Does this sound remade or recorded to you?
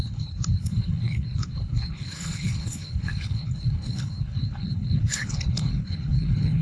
remade